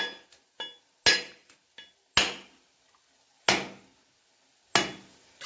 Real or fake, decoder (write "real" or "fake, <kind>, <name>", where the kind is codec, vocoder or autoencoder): real